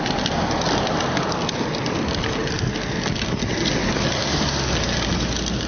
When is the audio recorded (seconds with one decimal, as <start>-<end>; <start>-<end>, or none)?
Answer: 0.0-5.7